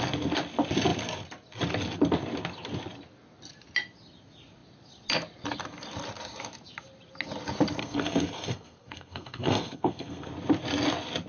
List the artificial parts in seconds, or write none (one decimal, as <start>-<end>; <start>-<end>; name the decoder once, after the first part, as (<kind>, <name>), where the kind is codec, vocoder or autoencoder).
7.8-10.3 (codec, SNAC)